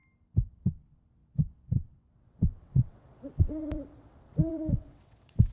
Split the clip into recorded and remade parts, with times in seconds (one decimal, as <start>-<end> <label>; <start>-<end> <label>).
0.0-0.5 recorded; 0.5-5.5 remade